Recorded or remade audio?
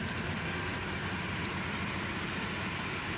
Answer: recorded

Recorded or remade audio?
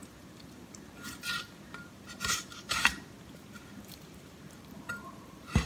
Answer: remade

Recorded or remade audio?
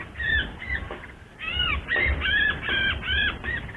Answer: remade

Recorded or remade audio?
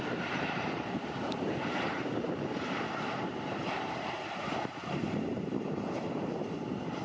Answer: remade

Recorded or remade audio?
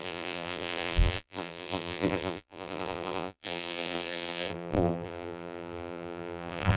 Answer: remade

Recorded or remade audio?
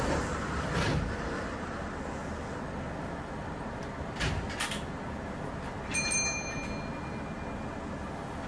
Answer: recorded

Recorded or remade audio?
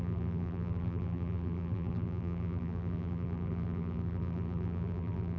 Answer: remade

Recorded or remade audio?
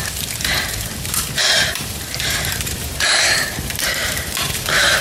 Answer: remade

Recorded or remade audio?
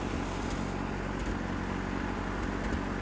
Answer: recorded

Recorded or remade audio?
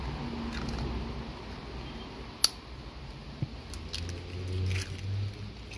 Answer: recorded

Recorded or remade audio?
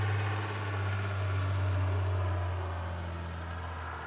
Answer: recorded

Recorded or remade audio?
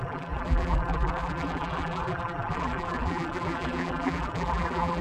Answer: remade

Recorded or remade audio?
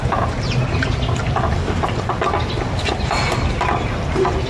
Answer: recorded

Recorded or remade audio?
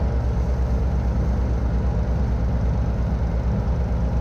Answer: recorded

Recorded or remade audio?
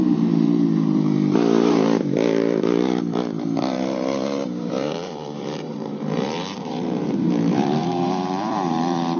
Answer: remade